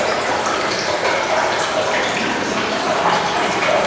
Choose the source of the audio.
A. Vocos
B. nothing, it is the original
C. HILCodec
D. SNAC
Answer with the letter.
B